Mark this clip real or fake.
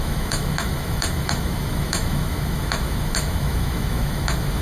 fake